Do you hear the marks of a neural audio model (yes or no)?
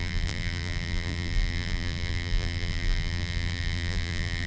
yes